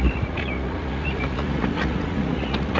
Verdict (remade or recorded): remade